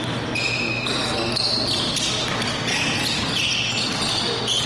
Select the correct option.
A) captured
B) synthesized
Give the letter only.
A